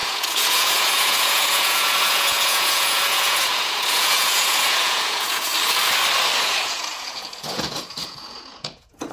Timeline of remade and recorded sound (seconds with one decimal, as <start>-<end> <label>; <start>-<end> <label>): 0.0-5.5 remade; 5.5-6.4 recorded; 6.4-9.1 remade